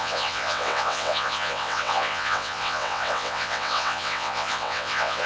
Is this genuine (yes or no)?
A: no